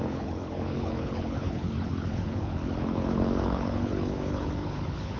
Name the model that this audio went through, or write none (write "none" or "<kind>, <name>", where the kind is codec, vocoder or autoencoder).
codec, HILCodec